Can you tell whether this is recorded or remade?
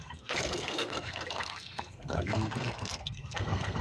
remade